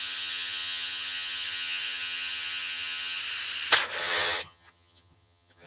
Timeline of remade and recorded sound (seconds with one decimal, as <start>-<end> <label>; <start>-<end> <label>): 0.0-3.2 remade; 3.2-4.0 recorded; 4.0-5.7 remade

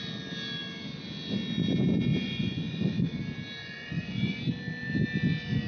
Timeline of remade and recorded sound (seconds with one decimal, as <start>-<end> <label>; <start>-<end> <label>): 0.0-2.1 recorded; 2.1-3.2 remade; 3.2-3.6 recorded; 3.6-4.4 remade; 4.4-5.7 recorded

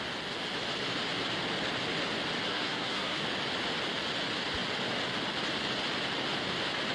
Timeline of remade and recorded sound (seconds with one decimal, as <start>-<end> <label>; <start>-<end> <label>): 0.0-2.4 recorded; 2.4-3.2 remade; 3.2-6.9 recorded

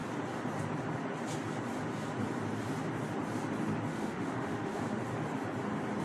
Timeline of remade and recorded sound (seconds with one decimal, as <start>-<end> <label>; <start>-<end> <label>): 0.0-3.9 recorded; 3.9-4.8 remade; 4.8-6.0 recorded